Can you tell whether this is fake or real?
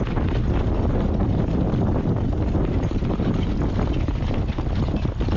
real